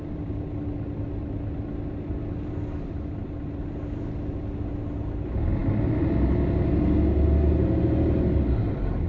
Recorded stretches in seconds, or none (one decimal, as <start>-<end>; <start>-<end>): 0.0-9.1